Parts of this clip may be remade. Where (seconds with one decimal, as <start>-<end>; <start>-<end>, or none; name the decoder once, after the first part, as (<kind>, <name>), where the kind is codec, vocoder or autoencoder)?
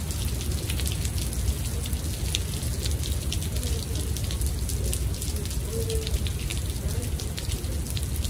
none